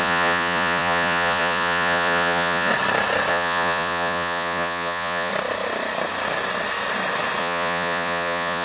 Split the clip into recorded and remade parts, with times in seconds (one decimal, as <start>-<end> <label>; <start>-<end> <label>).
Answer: 0.0-2.7 remade; 2.7-3.3 recorded; 3.3-5.3 remade; 5.3-7.4 recorded; 7.4-8.6 remade